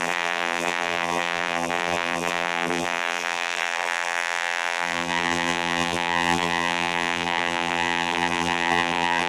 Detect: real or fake fake